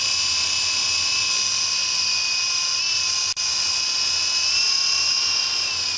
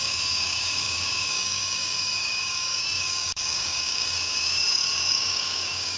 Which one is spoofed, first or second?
second